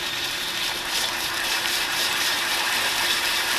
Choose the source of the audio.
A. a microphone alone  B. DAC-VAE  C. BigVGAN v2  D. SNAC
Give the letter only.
C